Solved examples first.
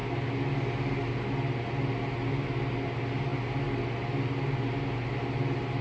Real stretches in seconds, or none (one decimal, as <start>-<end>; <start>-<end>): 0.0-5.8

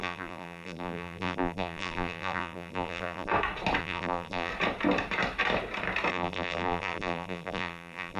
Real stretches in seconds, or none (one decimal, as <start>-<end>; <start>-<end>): 3.3-3.8; 4.5-6.1

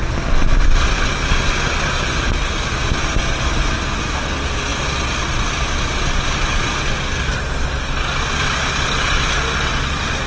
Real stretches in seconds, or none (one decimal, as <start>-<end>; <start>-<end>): 0.0-10.3

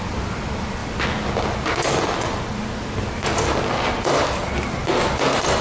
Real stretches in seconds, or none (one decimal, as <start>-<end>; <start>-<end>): 0.0-5.6

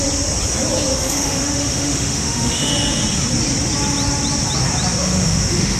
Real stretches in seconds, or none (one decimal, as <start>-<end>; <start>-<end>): 0.0-0.9; 2.7-5.0

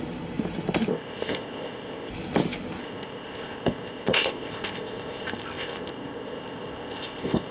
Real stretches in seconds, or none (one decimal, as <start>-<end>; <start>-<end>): 0.0-0.9; 2.1-2.8